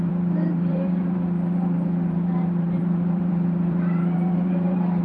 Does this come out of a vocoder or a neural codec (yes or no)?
yes